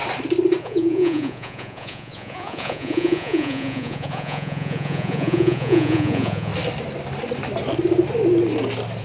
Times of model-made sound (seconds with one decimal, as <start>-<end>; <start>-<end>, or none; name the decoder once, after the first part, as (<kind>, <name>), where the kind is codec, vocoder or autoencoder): 0.6-6.5 (vocoder, Vocos)